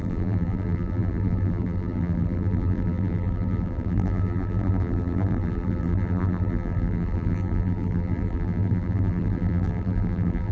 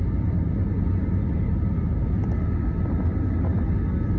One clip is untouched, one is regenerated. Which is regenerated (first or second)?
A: first